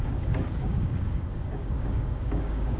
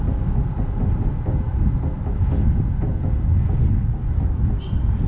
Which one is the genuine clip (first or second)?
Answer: second